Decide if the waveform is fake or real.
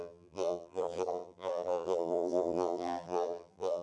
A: fake